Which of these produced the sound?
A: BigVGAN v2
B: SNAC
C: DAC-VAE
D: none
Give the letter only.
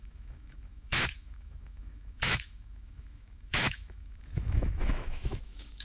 C